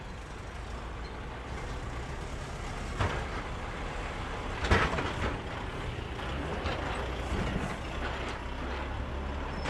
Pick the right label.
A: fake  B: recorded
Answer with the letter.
B